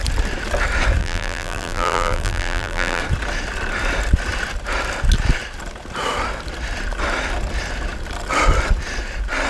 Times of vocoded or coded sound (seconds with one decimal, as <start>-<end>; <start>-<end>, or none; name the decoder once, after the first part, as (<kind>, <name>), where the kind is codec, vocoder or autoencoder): 1.0-3.0 (vocoder, BigVGAN v2)